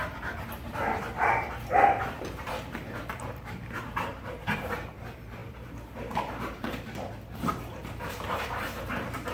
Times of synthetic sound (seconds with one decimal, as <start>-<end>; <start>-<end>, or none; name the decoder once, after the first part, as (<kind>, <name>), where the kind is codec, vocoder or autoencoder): 0.0-9.3 (vocoder, BigVGAN v2)